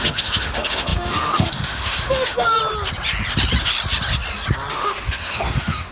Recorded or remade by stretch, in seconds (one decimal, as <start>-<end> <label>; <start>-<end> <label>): 0.0-2.6 remade; 2.6-4.7 recorded; 4.7-5.9 remade